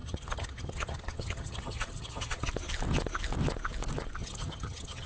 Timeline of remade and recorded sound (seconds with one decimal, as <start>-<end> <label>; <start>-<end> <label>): 0.0-2.5 remade; 2.5-4.2 recorded; 4.2-5.1 remade